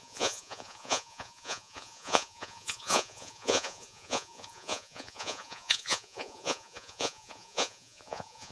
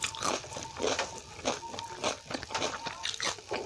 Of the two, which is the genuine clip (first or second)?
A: second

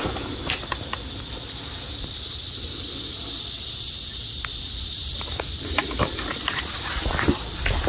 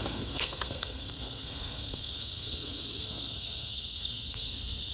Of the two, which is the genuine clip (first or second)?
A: first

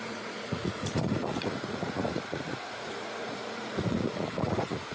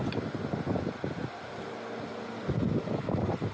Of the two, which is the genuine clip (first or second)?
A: second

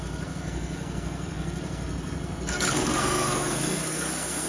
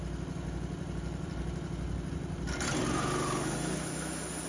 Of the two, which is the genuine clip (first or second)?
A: second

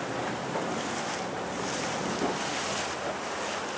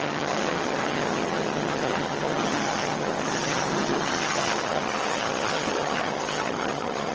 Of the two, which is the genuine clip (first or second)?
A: first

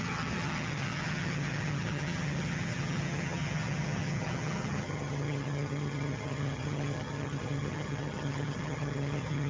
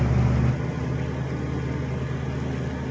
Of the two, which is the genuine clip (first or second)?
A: second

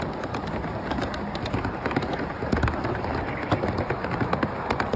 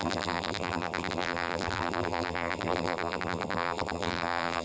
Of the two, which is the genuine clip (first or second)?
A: first